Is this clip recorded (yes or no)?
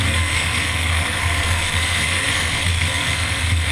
no